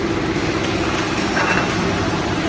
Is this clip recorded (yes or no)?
yes